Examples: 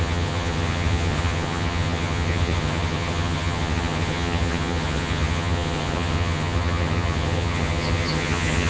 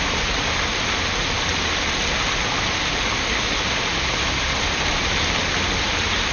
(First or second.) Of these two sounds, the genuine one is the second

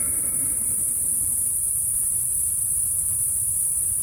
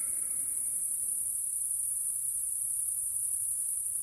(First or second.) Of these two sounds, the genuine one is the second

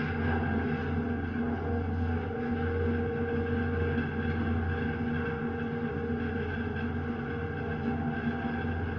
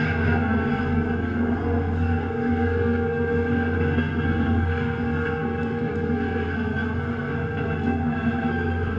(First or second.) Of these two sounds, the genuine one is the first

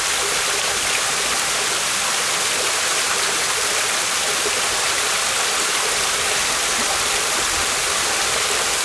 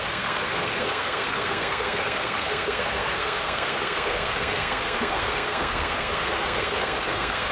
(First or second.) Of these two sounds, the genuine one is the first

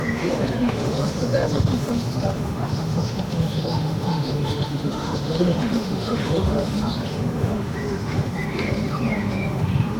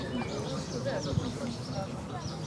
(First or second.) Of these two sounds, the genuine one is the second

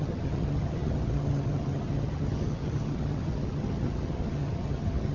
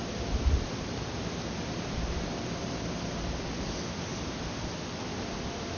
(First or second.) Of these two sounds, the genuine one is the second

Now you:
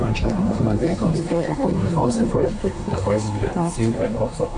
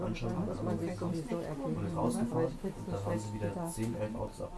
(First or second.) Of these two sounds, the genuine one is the second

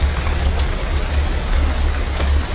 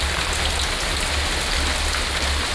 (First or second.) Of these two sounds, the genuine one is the second